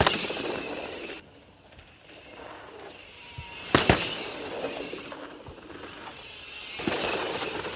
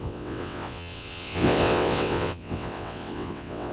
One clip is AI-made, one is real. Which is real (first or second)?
first